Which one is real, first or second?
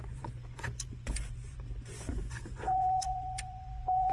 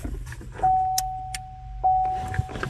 second